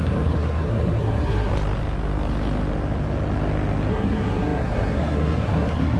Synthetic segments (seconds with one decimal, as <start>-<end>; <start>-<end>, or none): 0.0-1.5; 3.9-6.0